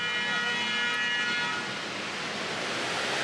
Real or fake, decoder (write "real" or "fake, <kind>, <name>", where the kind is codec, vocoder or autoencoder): real